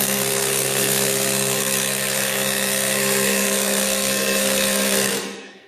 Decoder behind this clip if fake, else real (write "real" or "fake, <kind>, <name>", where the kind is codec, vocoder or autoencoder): fake, codec, SNAC